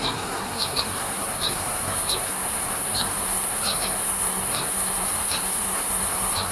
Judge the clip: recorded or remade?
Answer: remade